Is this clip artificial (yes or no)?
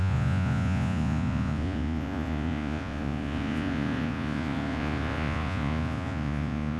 yes